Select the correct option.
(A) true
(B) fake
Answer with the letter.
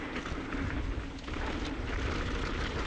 A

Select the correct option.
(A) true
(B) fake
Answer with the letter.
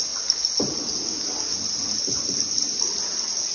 A